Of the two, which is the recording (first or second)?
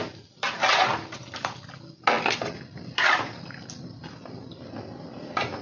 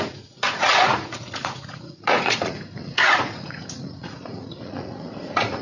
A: first